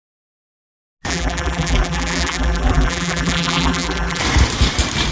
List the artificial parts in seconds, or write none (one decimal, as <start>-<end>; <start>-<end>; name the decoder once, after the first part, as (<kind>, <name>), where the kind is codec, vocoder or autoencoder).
1.1-4.2 (vocoder, BigVGAN v2)